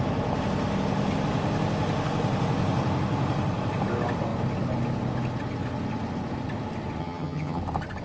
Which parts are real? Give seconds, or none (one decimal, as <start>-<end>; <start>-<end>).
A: 0.0-7.0; 7.6-8.0